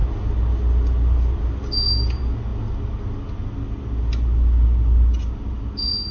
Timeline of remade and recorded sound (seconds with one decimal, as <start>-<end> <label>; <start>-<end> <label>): 0.0-6.1 recorded